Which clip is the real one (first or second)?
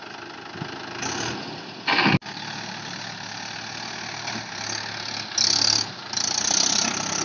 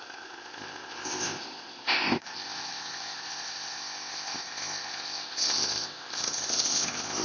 first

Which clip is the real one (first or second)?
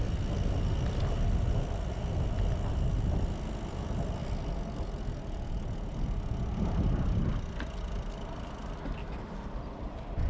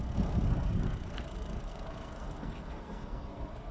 first